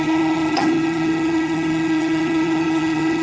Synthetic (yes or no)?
yes